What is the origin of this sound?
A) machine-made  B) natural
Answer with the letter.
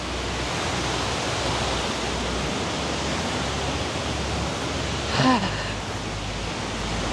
B